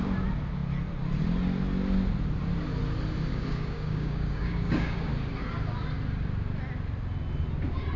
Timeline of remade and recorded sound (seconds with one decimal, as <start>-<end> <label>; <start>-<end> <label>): 0.0-3.3 recorded; 3.3-5.1 remade; 5.1-8.0 recorded

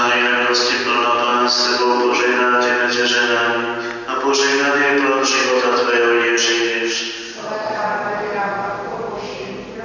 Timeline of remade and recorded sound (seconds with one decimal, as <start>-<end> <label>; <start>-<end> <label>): 0.0-9.8 recorded

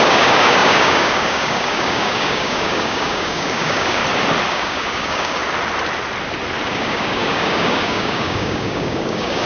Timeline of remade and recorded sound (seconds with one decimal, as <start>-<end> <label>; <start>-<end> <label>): 0.0-4.0 remade; 4.0-4.5 recorded; 4.5-5.4 remade; 5.4-6.7 recorded; 6.7-9.5 remade

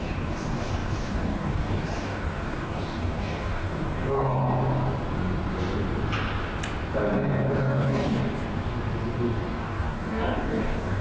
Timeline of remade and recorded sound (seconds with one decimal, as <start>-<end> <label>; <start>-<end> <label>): 0.0-4.4 remade; 4.4-7.5 recorded; 7.5-8.2 remade; 8.2-9.6 recorded; 9.6-11.0 remade

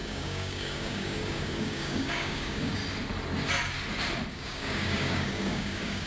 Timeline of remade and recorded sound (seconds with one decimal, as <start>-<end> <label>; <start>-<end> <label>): 0.0-2.8 remade; 2.8-4.3 recorded; 4.3-6.1 remade

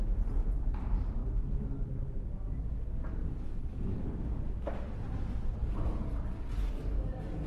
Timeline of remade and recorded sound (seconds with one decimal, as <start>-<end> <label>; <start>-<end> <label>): 0.0-1.2 recorded; 1.2-1.9 remade; 1.9-3.5 recorded; 3.5-4.1 remade; 4.1-5.6 recorded; 5.6-7.5 remade